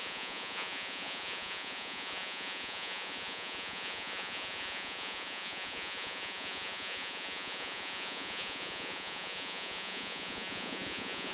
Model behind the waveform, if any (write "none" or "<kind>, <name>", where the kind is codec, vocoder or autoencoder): vocoder, Vocos